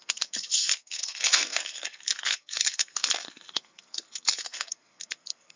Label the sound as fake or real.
fake